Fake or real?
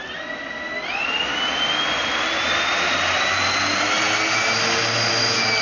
real